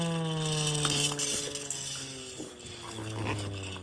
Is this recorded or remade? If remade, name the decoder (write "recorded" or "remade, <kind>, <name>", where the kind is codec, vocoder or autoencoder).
recorded